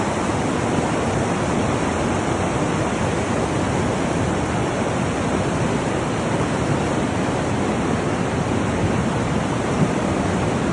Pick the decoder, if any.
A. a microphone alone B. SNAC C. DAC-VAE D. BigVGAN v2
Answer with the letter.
A